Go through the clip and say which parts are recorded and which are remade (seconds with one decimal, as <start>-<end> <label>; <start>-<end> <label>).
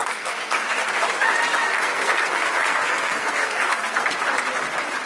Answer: 0.0-0.9 remade; 0.9-1.6 recorded; 1.6-4.1 remade; 4.1-5.1 recorded